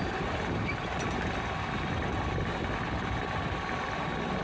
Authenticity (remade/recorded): recorded